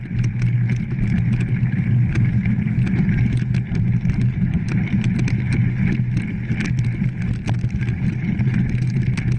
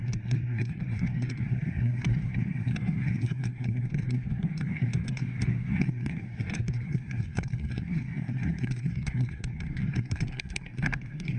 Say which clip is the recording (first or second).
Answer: first